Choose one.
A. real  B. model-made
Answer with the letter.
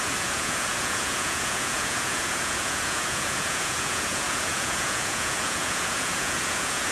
B